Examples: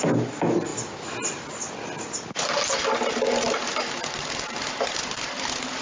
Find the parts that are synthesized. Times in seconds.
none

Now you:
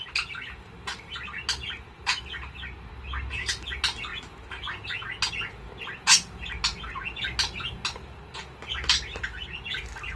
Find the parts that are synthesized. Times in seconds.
none

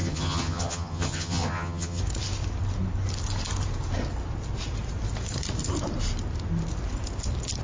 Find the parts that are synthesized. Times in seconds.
0.0-2.0 (vocoder, HiFi-GAN)

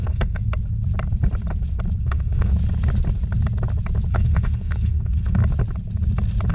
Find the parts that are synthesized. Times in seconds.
0.0-0.4 (codec, SNAC); 2.0-2.5; 4.1-5.4

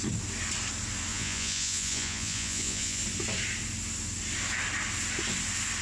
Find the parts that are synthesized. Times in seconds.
1.1-3.0 (vocoder, Vocos)